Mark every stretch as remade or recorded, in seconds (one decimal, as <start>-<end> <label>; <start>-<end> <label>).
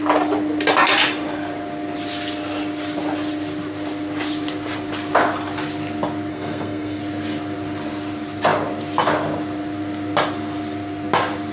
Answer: 0.0-6.3 recorded; 6.3-7.0 remade; 7.0-11.5 recorded